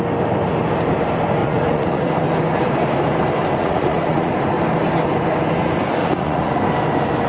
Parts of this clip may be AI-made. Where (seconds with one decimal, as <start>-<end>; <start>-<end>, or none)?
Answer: 1.4-2.1; 3.6-4.3; 6.0-6.6